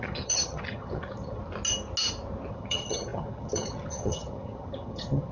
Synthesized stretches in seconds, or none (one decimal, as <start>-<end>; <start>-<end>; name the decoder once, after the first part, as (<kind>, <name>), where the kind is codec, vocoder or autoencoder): 0.0-1.4 (vocoder, HiFi-GAN); 2.5-5.3